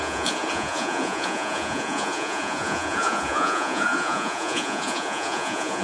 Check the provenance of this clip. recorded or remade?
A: remade